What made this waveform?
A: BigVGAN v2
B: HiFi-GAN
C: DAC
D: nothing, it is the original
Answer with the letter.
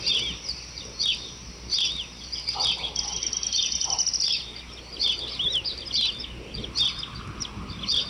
D